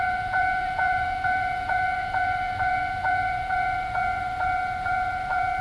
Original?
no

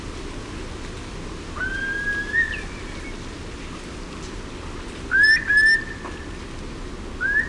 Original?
yes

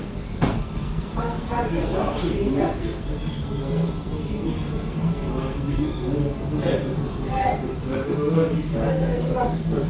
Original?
no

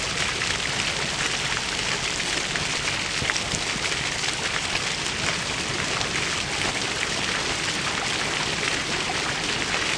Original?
yes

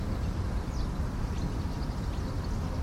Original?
yes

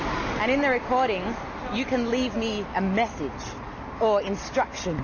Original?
yes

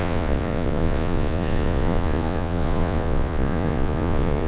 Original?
no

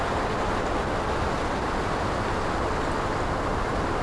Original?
yes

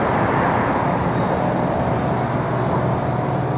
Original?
yes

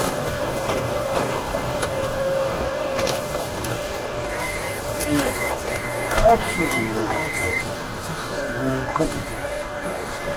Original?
no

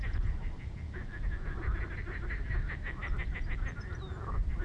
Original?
yes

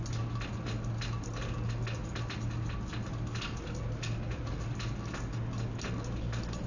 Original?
yes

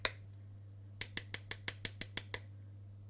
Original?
yes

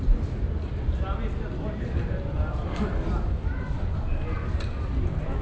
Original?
yes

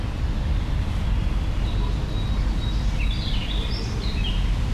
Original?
yes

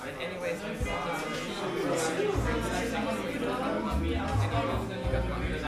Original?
yes